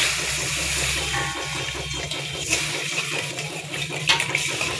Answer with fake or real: real